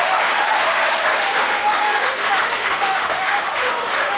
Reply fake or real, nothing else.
fake